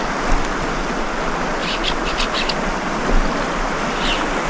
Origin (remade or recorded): recorded